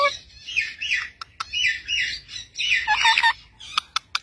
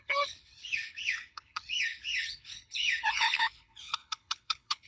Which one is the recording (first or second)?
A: first